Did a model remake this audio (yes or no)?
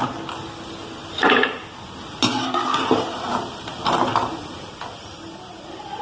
no